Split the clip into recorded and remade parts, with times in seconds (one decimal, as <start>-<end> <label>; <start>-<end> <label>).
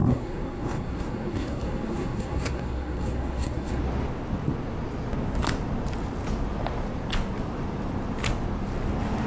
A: 0.0-3.8 remade; 3.8-9.3 recorded